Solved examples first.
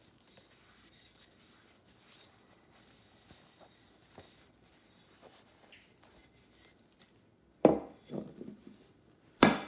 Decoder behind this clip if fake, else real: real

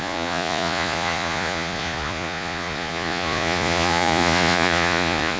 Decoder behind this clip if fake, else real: fake, vocoder, Vocos